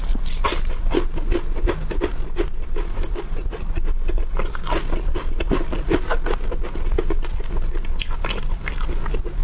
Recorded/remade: recorded